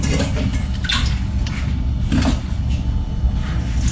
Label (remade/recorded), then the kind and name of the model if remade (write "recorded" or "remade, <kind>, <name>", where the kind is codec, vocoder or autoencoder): recorded